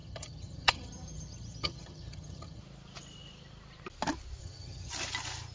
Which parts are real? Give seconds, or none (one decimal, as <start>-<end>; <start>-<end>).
2.6-4.4; 4.9-5.5